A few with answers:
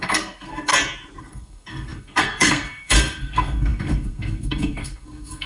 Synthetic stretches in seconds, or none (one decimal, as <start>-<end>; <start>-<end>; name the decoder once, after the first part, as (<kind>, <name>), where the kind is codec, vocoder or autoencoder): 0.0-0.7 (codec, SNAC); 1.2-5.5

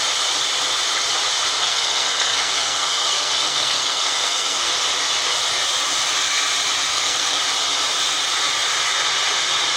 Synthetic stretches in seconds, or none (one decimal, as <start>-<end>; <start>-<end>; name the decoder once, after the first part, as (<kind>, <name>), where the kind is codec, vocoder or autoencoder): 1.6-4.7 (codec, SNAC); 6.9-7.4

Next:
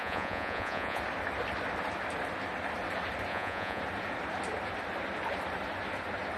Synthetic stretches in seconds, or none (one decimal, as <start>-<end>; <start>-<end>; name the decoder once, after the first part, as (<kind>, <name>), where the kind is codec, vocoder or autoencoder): 0.0-1.0 (vocoder, Vocos); 3.3-3.8